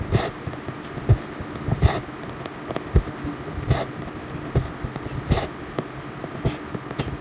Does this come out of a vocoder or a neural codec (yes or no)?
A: no